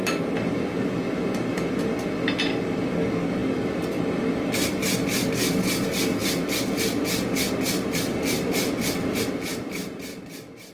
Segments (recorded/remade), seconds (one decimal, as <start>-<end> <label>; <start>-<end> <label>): 0.0-8.1 recorded; 8.1-10.7 remade